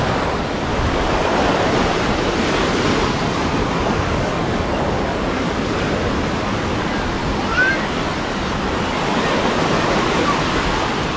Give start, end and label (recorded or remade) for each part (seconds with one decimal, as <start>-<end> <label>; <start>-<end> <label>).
0.0-3.6 recorded; 3.6-5.6 remade; 5.6-11.2 recorded